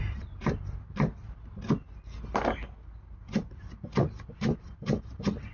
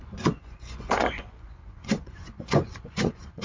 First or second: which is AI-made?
second